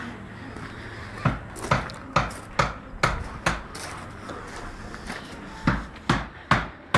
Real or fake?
real